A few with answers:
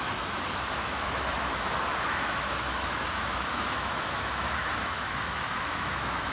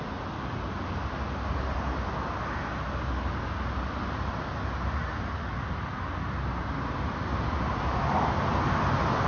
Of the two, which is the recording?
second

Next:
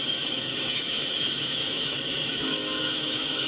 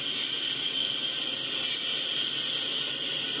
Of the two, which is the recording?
second